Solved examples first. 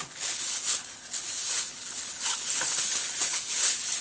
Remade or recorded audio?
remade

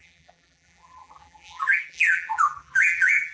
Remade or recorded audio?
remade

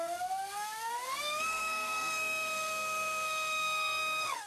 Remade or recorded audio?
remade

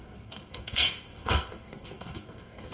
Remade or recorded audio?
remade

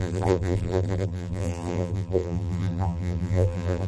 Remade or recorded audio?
remade